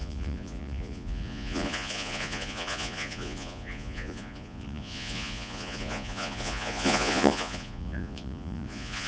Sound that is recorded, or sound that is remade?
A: remade